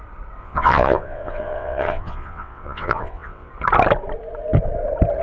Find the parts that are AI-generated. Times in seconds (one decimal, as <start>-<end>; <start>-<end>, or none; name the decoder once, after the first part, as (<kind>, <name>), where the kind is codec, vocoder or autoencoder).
0.4-3.5 (vocoder, WaveNeXt)